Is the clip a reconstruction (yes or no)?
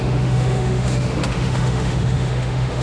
yes